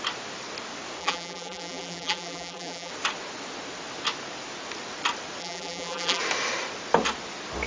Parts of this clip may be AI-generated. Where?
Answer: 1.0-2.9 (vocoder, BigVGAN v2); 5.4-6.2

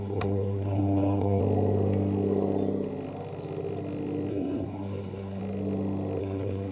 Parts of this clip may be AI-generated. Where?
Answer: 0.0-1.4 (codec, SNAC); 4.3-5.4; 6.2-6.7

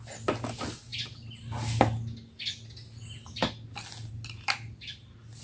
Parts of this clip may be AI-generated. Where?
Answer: none

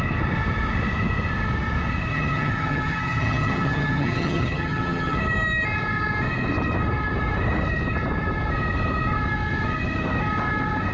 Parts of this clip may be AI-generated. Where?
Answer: 2.1-5.2 (vocoder, HiFi-GAN)

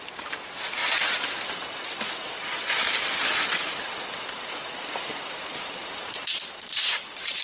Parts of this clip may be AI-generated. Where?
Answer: 0.0-0.8 (vocoder, BigVGAN v2); 5.2-7.4

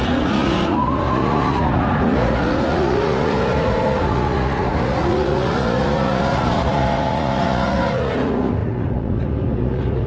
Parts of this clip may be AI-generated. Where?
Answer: 0.0-10.1 (vocoder, Vocos)